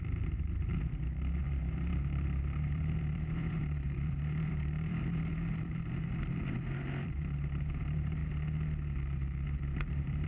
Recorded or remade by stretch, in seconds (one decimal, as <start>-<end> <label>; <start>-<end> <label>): 0.0-8.2 remade; 8.2-9.9 recorded; 9.9-10.3 remade